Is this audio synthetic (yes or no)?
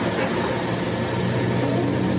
no